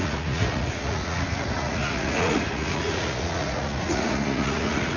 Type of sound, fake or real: fake